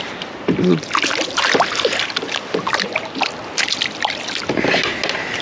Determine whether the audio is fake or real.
real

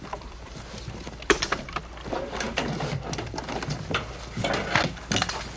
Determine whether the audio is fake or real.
real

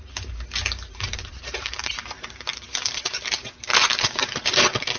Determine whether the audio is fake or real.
fake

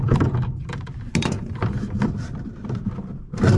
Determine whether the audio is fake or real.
real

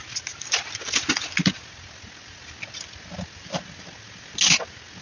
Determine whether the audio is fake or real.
real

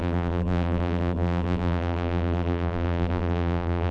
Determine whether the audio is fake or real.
fake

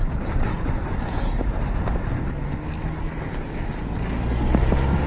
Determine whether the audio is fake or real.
real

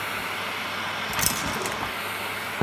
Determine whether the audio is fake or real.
real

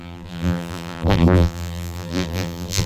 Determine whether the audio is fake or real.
fake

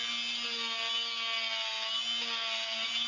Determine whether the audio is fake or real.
real